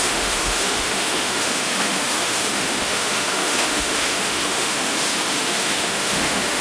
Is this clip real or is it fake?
fake